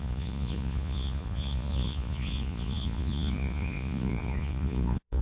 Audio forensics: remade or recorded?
remade